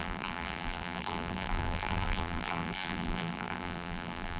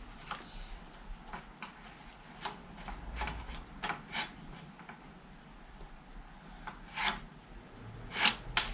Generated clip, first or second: first